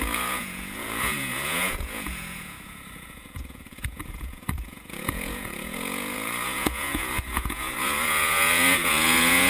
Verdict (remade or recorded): remade